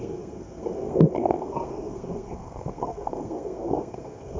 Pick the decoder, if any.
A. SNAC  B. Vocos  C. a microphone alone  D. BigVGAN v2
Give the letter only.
A